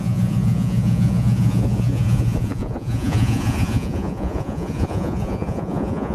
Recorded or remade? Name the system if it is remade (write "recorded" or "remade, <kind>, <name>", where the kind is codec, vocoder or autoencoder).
remade, vocoder, Vocos